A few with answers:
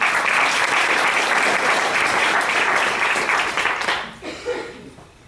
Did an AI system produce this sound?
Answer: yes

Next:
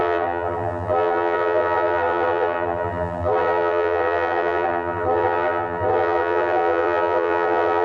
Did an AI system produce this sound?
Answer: yes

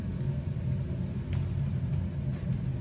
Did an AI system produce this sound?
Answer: no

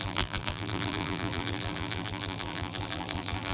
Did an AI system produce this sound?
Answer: yes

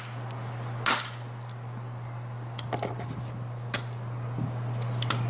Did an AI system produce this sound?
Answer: no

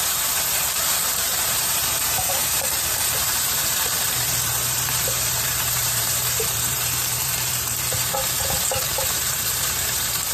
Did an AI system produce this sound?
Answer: yes